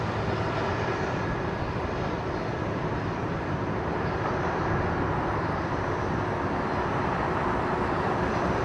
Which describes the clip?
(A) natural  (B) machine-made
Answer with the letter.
B